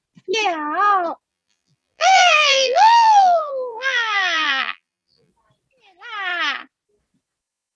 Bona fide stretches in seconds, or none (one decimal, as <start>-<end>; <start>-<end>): 0.0-1.3; 5.3-7.8